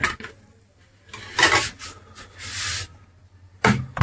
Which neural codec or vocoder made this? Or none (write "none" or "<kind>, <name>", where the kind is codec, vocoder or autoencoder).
none